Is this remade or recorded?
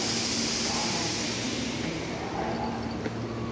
recorded